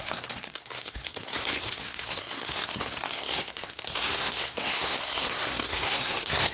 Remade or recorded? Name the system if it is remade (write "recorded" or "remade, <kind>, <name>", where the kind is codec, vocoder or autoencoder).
remade, codec, SNAC